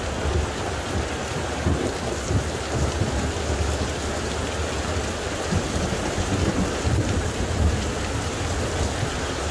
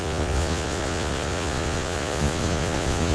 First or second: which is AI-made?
second